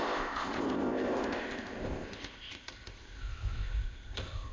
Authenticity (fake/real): fake